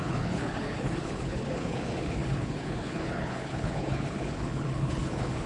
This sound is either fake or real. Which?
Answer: fake